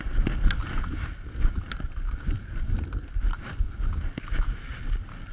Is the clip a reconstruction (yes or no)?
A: no